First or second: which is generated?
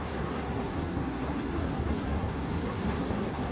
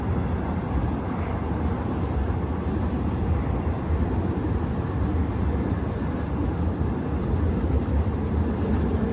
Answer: first